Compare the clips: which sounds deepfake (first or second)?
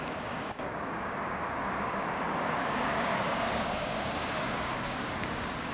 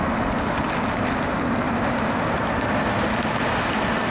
first